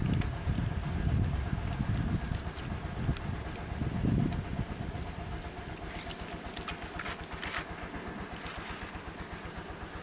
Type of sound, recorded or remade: recorded